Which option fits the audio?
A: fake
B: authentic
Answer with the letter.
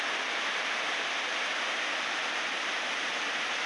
B